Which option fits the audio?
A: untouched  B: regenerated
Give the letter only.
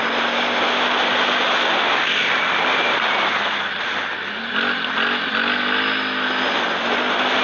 A